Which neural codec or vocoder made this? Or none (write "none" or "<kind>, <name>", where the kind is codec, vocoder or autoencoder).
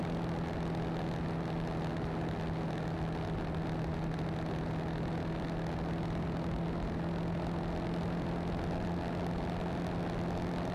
none